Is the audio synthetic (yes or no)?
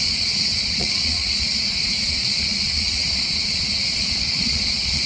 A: yes